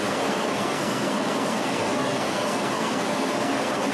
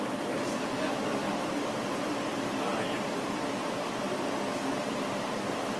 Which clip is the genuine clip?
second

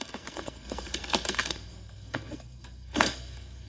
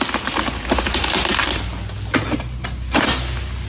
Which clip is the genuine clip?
second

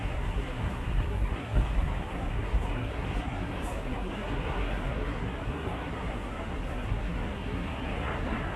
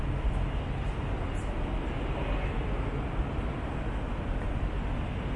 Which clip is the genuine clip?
second